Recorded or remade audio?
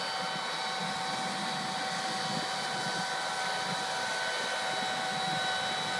recorded